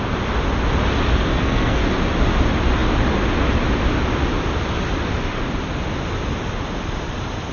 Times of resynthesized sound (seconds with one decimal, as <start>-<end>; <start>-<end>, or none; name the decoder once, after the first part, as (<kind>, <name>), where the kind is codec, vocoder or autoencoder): 1.3-1.8 (codec, SNAC)